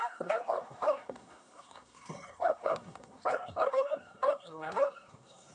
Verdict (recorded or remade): remade